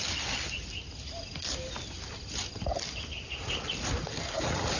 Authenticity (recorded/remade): recorded